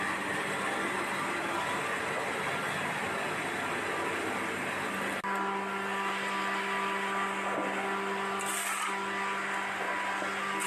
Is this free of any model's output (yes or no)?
yes